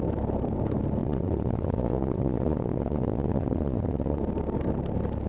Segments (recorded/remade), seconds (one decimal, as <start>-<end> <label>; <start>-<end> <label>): 0.0-1.0 recorded; 1.0-4.2 remade; 4.2-5.3 recorded

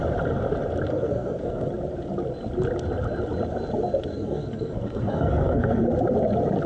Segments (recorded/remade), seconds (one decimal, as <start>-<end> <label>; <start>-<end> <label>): 0.0-0.9 recorded; 0.9-1.7 remade; 1.7-4.1 recorded; 4.1-5.9 remade; 5.9-6.7 recorded

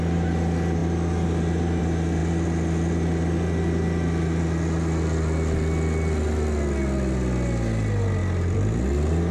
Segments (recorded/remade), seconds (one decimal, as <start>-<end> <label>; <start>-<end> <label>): 0.0-8.2 recorded; 8.2-8.8 remade; 8.8-9.3 recorded

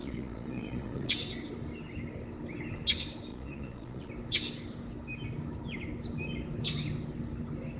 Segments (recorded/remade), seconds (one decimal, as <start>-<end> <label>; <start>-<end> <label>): 0.0-1.1 remade; 1.1-3.3 recorded; 3.3-4.1 remade; 4.1-7.8 recorded

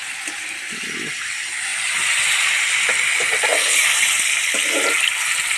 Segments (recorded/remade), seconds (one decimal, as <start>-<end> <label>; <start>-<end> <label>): 0.0-5.6 recorded